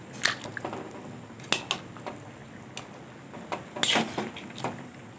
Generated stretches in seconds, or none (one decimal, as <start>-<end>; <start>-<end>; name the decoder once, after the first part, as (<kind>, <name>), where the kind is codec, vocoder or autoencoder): none